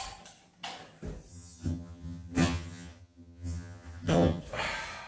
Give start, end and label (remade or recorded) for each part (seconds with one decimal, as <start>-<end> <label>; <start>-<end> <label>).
0.0-1.3 recorded; 1.3-4.4 remade; 4.4-5.1 recorded